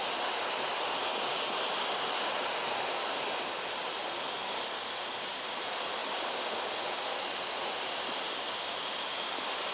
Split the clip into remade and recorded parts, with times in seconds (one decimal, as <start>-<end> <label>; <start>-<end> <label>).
0.0-4.4 recorded; 4.4-4.9 remade; 4.9-9.7 recorded